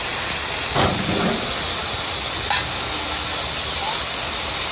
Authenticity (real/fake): real